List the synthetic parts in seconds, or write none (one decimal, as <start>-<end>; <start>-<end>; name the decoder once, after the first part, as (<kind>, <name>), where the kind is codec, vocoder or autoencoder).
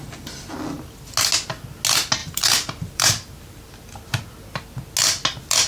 2.2-3.7 (vocoder, BigVGAN v2)